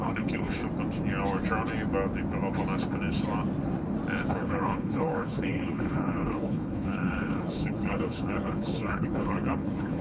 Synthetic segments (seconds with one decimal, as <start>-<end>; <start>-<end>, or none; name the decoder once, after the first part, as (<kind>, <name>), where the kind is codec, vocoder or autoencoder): 0.0-0.6 (codec, HILCodec); 4.3-10.0